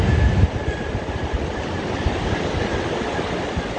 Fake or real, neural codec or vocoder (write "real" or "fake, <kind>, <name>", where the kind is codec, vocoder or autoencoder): real